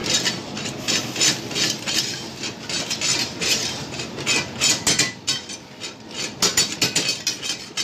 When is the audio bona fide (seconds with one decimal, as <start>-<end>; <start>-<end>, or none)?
0.0-3.1; 4.0-7.8